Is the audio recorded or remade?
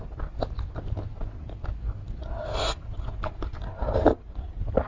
recorded